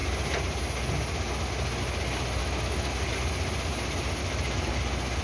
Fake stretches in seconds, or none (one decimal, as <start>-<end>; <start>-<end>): 2.4-2.9; 4.2-4.7